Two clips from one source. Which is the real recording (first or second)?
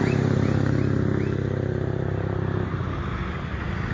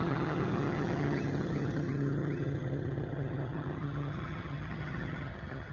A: first